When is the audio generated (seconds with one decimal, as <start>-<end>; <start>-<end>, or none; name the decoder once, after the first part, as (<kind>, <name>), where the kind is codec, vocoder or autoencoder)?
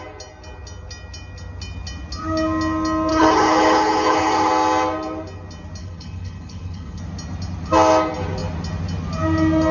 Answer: 3.1-4.5 (codec, HILCodec); 5.8-7.0